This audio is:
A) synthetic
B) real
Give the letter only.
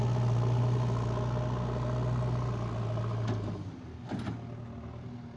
B